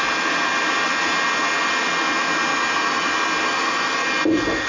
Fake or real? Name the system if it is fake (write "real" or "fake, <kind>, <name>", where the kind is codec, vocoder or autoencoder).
real